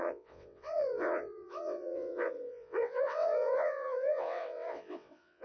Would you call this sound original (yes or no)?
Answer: no